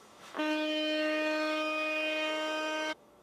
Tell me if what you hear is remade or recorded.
remade